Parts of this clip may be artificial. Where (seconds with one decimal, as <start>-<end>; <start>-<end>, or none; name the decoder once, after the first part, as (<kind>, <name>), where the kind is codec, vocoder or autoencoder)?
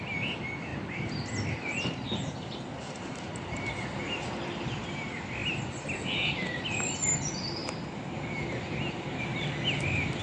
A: 0.7-4.6 (vocoder, BigVGAN v2)